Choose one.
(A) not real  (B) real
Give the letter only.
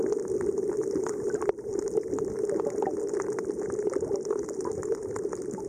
A